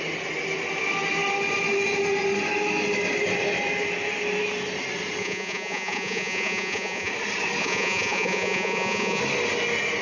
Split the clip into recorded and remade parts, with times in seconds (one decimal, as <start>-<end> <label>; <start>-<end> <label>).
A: 0.0-5.2 recorded; 5.2-7.1 remade; 7.1-7.6 recorded; 7.6-9.2 remade; 9.2-10.0 recorded